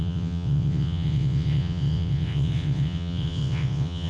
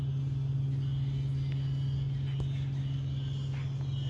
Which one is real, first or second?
second